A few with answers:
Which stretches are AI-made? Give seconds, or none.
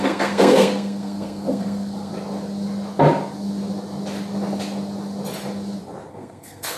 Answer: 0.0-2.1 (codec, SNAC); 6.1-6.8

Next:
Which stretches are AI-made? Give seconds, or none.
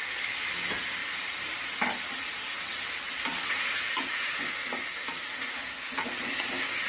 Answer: none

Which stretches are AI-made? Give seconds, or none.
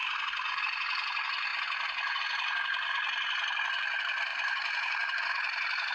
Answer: 4.3-5.2 (vocoder, BigVGAN v2)